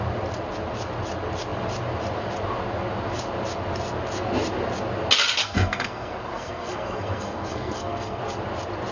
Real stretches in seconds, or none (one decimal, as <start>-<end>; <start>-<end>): 0.0-5.4; 8.2-8.9